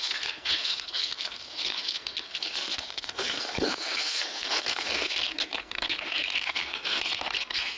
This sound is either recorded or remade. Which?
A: remade